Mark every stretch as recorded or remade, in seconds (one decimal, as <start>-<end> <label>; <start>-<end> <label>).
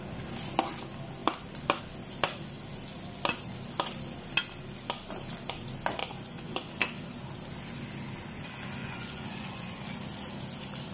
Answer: 0.0-6.0 recorded; 6.0-6.7 remade; 6.7-8.8 recorded; 8.8-9.8 remade; 9.8-10.9 recorded